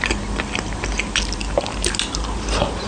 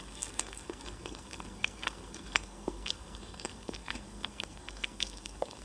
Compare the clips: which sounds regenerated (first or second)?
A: second